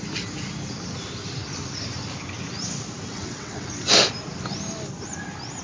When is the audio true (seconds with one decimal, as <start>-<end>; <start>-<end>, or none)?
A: 0.0-3.1; 3.9-5.6